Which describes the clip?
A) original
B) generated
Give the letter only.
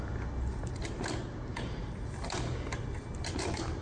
A